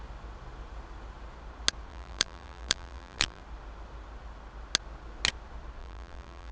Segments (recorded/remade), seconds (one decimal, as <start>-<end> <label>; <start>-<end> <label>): 0.0-1.9 recorded; 1.9-3.4 remade; 3.4-5.8 recorded; 5.8-6.5 remade